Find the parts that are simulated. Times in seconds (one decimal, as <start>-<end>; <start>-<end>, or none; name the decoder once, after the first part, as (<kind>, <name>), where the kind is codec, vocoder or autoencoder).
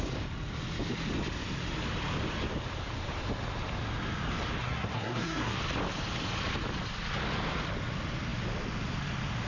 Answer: 4.6-5.6 (codec, SNAC)